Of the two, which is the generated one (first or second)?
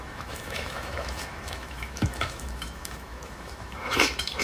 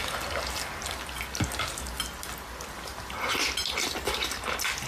first